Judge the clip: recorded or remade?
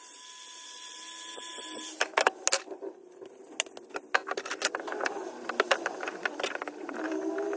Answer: recorded